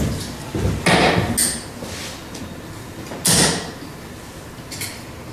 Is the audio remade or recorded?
recorded